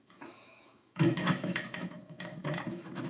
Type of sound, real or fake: fake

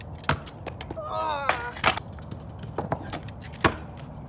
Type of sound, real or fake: real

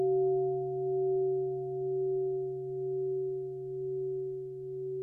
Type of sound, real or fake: real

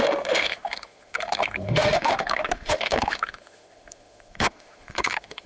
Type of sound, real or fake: fake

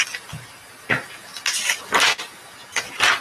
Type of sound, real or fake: real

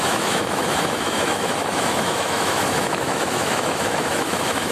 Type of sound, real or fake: fake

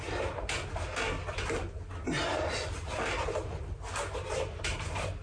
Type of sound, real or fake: real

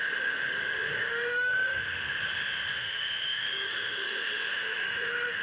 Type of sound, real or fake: fake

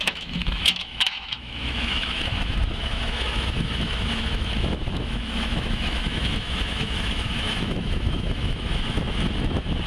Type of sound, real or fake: fake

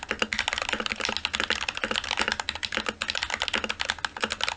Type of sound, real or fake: real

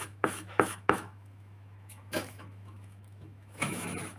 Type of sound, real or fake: fake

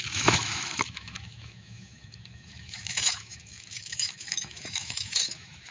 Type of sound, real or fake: fake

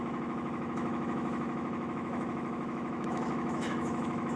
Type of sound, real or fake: fake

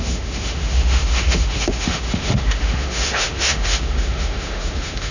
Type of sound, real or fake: fake